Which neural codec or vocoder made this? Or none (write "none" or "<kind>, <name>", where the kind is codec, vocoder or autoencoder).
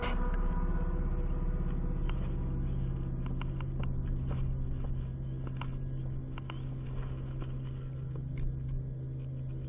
none